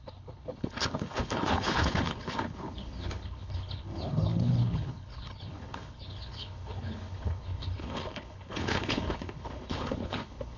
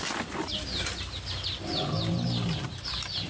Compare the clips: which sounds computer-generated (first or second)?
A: first